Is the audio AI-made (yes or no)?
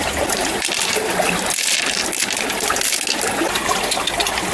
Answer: no